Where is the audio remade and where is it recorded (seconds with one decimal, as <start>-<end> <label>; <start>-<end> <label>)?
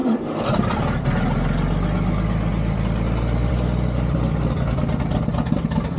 0.0-6.0 recorded